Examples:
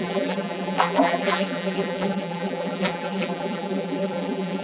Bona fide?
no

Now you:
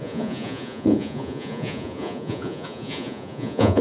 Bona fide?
no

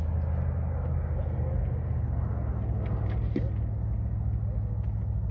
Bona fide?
yes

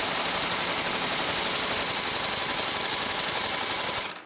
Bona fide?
yes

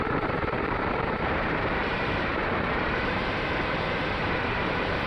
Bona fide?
no